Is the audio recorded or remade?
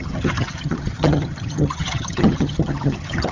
remade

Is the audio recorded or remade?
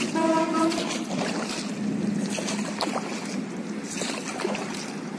recorded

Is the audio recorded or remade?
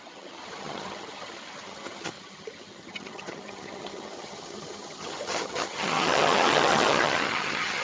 remade